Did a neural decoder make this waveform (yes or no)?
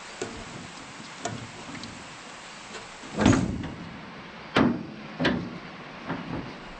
no